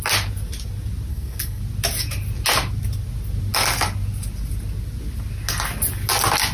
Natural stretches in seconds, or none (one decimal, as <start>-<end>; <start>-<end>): 0.0-1.1; 1.6-6.5

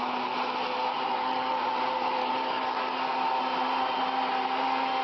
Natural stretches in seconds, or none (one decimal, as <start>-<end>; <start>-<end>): 0.0-1.1; 1.7-2.2; 2.9-5.0

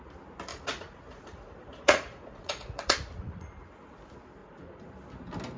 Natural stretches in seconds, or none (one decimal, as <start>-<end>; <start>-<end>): 0.0-0.5; 3.5-4.4; 4.9-5.6

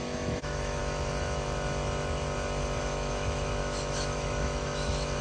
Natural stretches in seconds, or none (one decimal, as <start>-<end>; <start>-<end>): 0.8-2.8

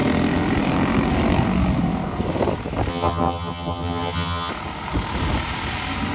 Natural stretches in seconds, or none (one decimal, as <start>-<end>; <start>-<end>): 0.0-2.9; 4.5-6.1